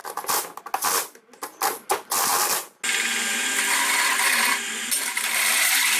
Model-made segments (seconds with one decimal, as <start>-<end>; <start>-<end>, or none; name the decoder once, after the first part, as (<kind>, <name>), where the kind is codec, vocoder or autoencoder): none